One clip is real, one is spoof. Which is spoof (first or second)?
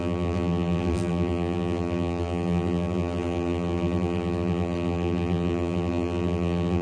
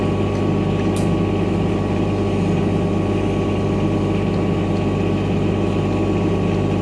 first